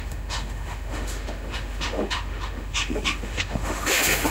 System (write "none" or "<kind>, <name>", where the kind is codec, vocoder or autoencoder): autoencoder, DAC-VAE